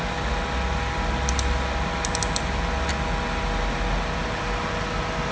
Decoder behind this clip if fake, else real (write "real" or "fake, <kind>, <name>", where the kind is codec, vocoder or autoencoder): real